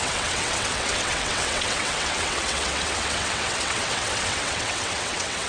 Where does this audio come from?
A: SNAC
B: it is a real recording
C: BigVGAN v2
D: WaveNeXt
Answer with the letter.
D